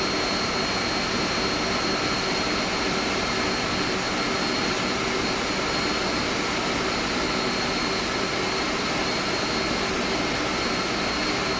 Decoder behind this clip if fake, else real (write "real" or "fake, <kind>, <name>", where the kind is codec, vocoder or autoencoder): real